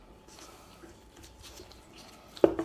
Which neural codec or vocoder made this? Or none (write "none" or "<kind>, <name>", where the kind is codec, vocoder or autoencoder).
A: none